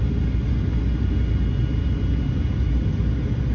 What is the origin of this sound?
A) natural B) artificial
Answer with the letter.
A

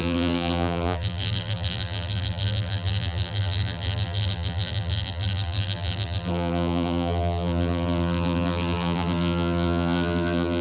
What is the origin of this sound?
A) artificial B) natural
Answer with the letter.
A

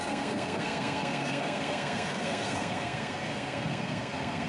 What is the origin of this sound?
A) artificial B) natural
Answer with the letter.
A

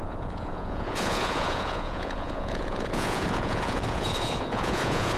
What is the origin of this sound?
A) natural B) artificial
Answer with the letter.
B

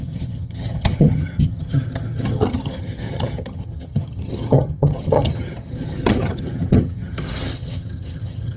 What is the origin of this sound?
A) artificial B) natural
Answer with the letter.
A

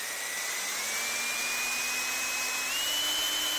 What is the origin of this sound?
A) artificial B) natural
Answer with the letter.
B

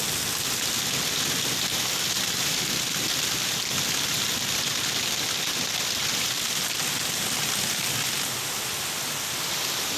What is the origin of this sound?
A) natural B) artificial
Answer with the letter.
A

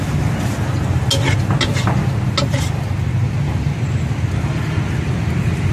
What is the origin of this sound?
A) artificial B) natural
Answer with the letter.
B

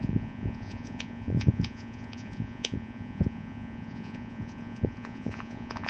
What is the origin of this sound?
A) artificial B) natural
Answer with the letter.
A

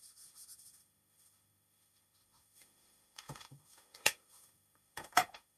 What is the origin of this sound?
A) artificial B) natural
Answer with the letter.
A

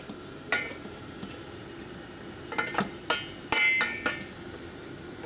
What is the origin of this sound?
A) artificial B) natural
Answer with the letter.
B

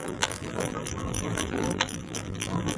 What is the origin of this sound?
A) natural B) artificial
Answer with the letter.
B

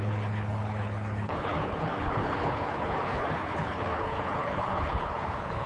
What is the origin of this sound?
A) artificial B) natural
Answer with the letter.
A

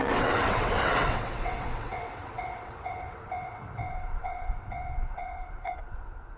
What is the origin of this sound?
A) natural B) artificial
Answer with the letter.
B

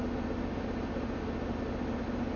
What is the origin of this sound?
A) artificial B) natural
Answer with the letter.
B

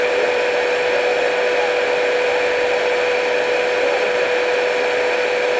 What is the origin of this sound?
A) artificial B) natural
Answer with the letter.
B